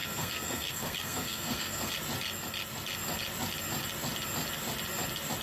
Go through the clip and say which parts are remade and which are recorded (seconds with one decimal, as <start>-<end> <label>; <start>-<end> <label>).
0.0-1.9 remade; 1.9-5.4 recorded